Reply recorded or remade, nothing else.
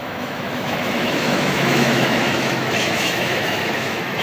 remade